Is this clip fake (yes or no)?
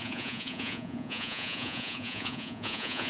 yes